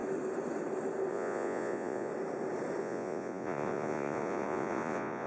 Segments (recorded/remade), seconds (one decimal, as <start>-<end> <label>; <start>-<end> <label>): 0.0-1.1 recorded; 1.1-2.1 remade; 2.1-2.8 recorded; 2.8-5.3 remade